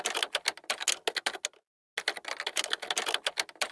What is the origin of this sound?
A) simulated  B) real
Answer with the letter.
B